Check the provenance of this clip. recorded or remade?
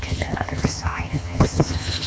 remade